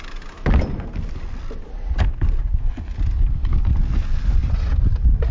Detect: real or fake real